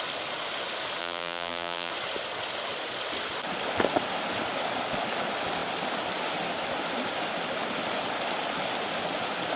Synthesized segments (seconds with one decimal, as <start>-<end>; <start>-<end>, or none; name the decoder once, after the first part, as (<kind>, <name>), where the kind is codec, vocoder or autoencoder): 1.0-1.9 (vocoder, BigVGAN v2)